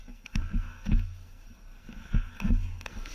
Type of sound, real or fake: fake